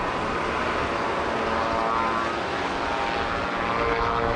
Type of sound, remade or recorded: recorded